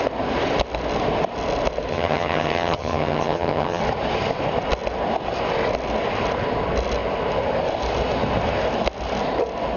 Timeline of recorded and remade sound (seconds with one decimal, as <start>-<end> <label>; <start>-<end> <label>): 0.0-1.9 recorded; 1.9-3.8 remade; 3.8-9.8 recorded